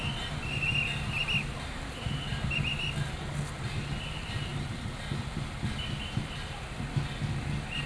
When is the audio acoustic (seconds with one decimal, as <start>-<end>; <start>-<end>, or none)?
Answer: 0.0-7.9